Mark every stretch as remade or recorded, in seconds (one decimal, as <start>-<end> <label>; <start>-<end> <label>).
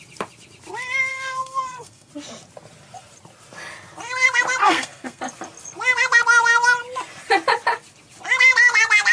0.0-1.1 recorded; 1.1-2.1 remade; 2.1-4.6 recorded; 4.6-5.2 remade; 5.2-9.1 recorded